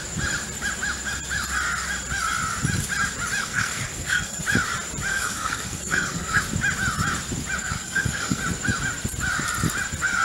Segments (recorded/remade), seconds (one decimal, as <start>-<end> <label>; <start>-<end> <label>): 0.0-3.4 recorded; 3.4-4.4 remade; 4.4-5.1 recorded; 5.1-6.4 remade; 6.4-7.6 recorded; 7.6-8.4 remade; 8.4-10.2 recorded